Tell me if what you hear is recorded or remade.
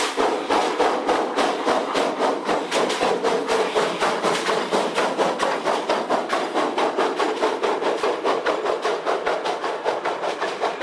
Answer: recorded